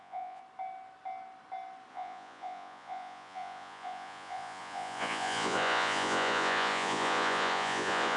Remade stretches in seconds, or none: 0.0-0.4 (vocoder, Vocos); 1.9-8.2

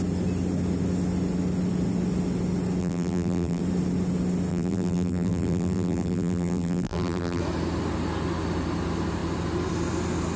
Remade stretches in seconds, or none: 2.8-3.6 (vocoder, BigVGAN v2); 4.5-7.4

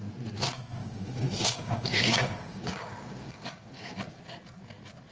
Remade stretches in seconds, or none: 0.8-3.9 (codec, DAC)